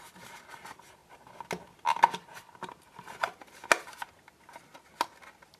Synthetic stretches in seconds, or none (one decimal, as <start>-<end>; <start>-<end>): none